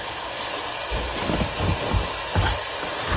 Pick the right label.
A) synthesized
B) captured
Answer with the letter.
B